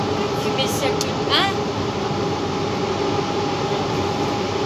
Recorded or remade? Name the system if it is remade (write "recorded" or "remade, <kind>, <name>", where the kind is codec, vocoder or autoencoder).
recorded